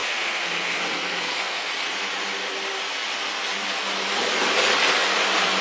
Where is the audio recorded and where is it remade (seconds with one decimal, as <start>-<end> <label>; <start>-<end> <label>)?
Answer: 0.0-1.7 remade; 1.7-5.6 recorded